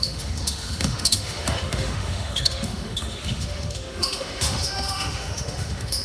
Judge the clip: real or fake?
fake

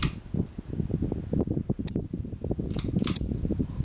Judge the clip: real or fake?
real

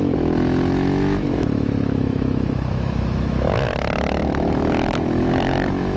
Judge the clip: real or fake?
fake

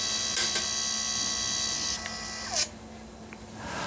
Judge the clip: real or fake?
real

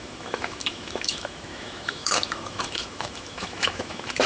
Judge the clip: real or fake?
fake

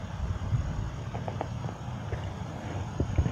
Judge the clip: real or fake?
real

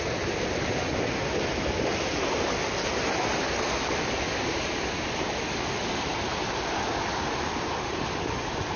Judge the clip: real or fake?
real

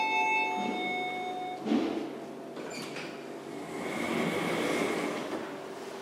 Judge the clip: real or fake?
real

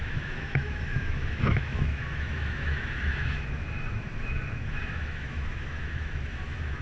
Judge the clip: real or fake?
fake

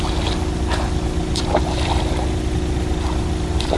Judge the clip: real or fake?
real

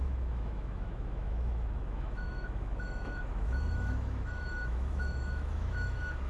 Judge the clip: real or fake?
fake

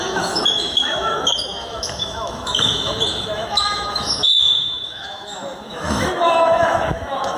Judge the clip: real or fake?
fake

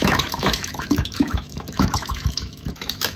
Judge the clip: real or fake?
fake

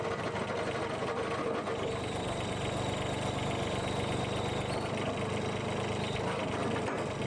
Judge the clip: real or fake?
real